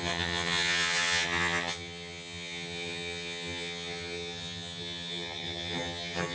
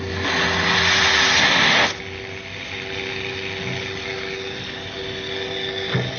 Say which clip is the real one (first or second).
second